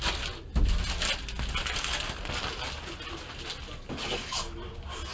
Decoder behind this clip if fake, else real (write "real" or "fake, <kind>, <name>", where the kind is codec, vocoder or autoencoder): real